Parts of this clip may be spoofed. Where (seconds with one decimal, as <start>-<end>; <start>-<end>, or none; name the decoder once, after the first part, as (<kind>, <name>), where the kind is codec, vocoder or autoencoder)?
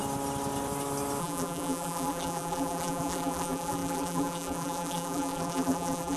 1.2-6.2 (vocoder, BigVGAN v2)